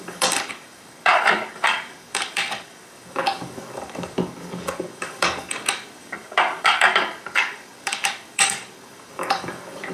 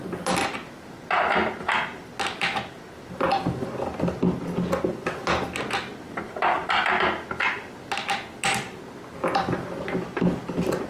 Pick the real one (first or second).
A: second